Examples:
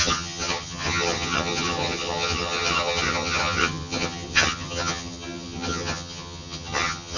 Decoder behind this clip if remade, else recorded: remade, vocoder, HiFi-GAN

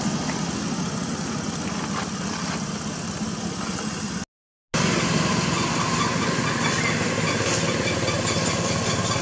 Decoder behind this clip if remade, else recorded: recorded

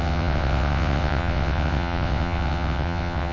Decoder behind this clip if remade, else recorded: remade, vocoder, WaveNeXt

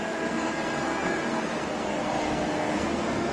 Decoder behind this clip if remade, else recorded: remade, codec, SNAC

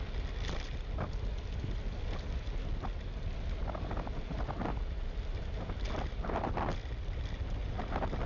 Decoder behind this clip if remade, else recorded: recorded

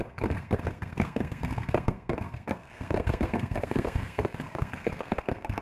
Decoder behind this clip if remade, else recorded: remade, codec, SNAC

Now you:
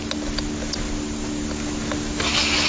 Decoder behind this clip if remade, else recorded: recorded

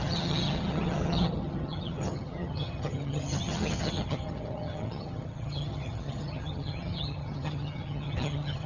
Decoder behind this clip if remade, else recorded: remade, vocoder, HiFi-GAN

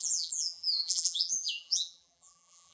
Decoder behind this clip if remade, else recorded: remade, vocoder, BigVGAN v2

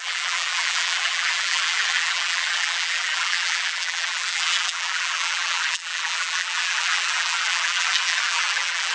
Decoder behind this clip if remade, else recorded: remade, vocoder, BigVGAN v2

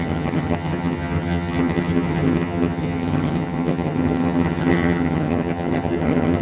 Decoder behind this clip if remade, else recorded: remade, vocoder, HiFi-GAN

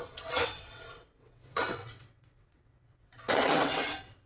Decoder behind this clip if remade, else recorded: remade, vocoder, WaveNeXt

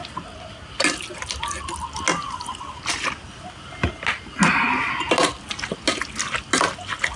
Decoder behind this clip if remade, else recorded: recorded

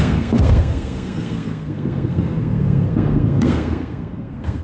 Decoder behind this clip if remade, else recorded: remade, codec, SNAC